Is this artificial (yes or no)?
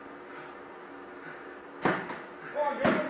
no